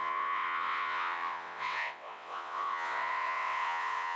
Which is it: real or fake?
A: fake